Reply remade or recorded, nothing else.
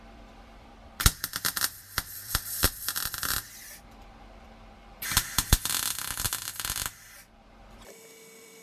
remade